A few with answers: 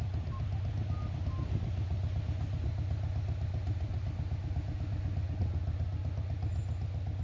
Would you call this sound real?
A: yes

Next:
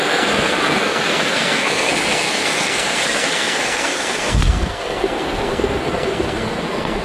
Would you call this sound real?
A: no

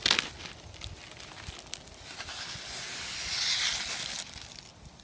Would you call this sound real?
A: yes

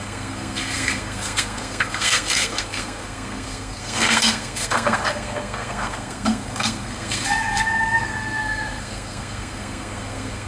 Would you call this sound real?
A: no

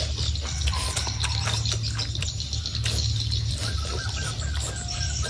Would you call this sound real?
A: yes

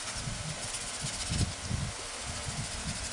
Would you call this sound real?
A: yes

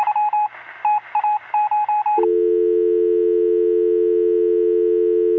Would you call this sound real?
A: yes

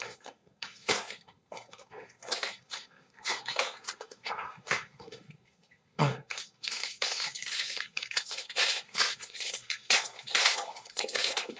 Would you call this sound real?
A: no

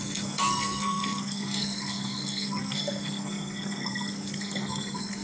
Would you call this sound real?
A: no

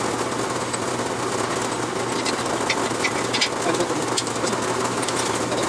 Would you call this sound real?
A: yes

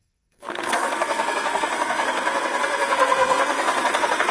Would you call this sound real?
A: no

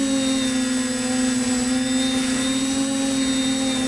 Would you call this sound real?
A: yes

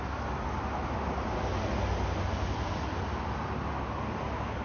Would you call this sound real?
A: yes